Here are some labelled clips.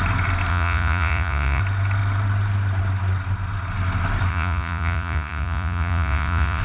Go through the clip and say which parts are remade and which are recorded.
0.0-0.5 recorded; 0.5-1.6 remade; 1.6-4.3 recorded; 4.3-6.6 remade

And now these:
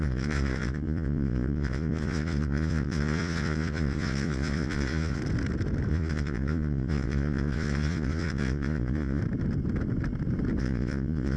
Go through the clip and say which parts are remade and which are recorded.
0.0-5.2 remade; 5.2-5.9 recorded; 5.9-9.2 remade; 9.2-10.6 recorded; 10.6-11.4 remade

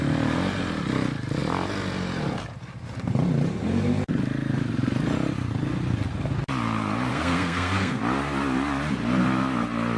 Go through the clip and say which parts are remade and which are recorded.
0.0-7.1 recorded; 7.1-8.0 remade; 8.0-10.0 recorded

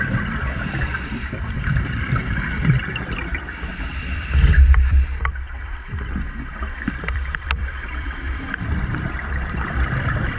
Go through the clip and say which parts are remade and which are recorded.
0.0-10.4 remade

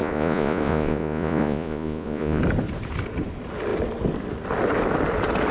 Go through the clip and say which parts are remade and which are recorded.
0.0-2.4 remade; 2.4-5.5 recorded

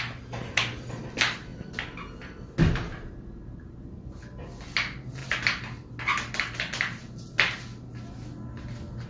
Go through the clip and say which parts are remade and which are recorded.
0.0-9.1 recorded

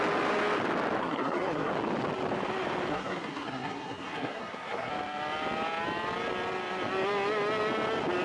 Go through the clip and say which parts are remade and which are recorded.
0.0-1.0 recorded; 1.0-1.7 remade; 1.7-2.9 recorded; 2.9-4.9 remade; 4.9-8.2 recorded

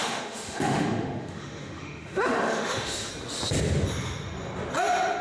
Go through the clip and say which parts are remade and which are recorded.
0.0-3.1 remade; 3.1-5.2 recorded